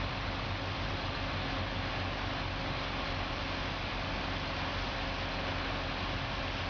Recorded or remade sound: recorded